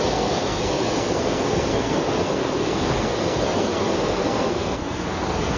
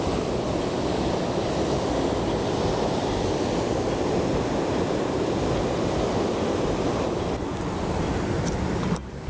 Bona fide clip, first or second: second